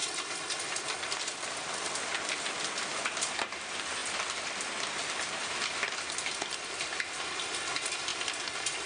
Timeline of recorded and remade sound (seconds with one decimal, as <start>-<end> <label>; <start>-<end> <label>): 0.0-8.9 recorded